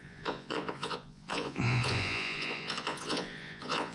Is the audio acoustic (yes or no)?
no